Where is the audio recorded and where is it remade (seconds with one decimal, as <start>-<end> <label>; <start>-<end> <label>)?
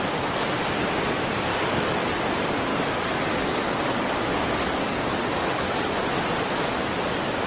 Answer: 0.0-1.5 recorded; 1.5-2.2 remade; 2.2-2.7 recorded; 2.7-5.9 remade; 5.9-7.5 recorded